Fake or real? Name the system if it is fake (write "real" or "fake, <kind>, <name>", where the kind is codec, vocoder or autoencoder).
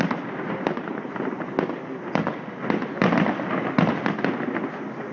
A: real